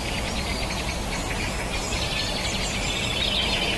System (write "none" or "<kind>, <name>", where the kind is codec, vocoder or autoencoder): none